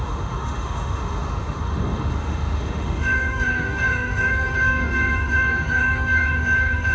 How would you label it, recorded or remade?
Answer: remade